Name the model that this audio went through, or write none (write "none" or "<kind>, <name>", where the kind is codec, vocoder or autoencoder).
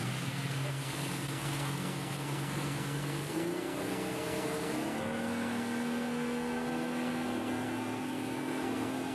codec, SNAC